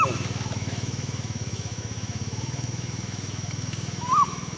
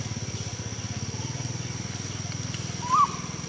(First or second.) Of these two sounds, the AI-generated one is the first